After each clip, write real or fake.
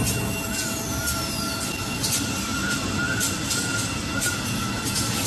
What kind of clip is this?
real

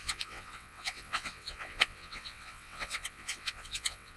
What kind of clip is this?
fake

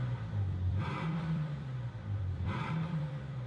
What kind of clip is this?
fake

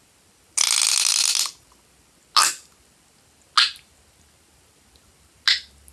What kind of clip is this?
real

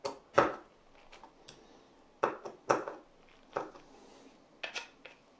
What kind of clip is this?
real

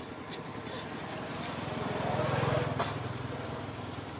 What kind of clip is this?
real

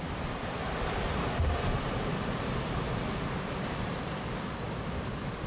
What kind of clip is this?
real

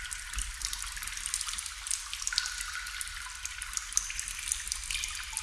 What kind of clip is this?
real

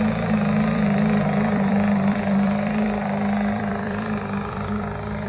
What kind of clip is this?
fake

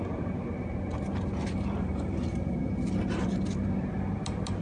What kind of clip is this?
fake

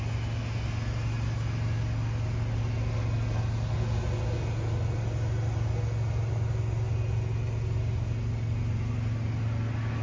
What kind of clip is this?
real